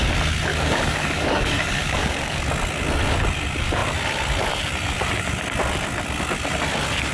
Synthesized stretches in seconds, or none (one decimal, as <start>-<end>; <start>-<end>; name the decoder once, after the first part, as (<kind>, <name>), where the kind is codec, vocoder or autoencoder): 0.5-2.4 (codec, DAC)